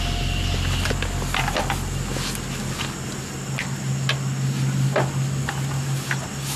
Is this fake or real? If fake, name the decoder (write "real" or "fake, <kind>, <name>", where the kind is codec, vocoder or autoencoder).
real